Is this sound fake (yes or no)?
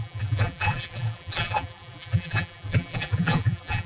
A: yes